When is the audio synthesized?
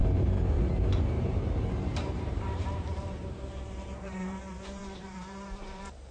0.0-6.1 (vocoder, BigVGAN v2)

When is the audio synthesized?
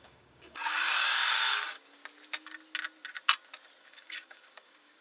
0.0-2.0 (codec, DAC); 3.8-5.0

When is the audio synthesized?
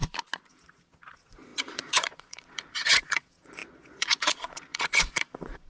0.5-5.7 (vocoder, Vocos)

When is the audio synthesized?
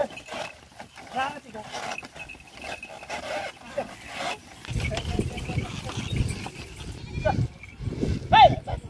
none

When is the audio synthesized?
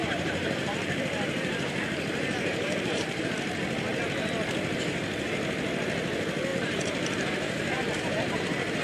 0.0-3.3 (vocoder, BigVGAN v2); 6.5-8.8